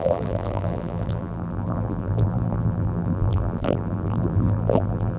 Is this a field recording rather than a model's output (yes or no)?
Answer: no